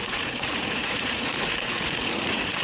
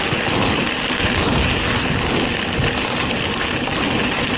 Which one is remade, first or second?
first